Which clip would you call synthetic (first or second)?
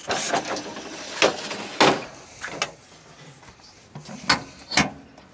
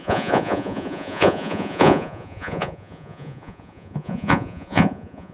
second